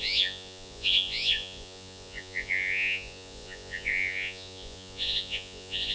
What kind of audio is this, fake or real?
fake